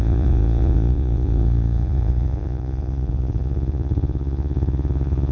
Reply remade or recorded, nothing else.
remade